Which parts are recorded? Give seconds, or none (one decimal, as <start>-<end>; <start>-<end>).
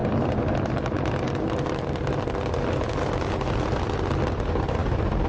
0.0-5.3